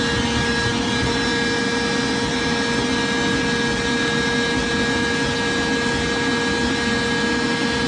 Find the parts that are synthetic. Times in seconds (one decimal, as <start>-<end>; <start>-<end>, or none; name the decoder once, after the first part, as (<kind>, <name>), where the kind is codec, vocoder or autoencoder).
none

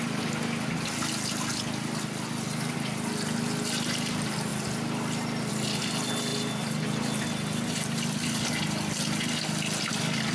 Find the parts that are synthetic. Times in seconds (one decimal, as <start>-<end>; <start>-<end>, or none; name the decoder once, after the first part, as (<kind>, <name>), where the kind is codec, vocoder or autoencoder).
none

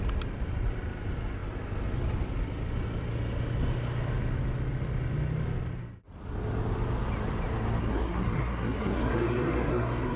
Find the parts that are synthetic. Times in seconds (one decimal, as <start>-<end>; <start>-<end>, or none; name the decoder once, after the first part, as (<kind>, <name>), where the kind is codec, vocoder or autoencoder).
7.8-10.2 (codec, SNAC)